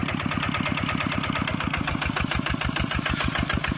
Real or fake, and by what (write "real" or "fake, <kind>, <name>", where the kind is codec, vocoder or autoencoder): real